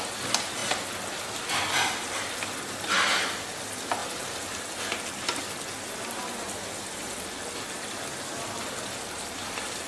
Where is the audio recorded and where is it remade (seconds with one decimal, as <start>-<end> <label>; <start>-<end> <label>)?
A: 0.0-9.9 recorded